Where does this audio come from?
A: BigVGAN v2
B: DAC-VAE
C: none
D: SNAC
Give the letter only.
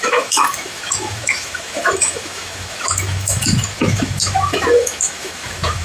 B